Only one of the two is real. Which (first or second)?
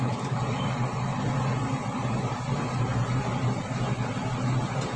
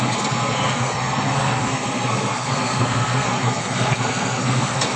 first